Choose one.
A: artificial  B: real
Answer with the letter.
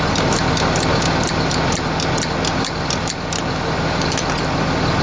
B